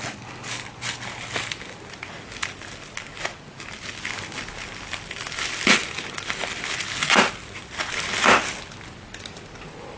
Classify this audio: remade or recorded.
recorded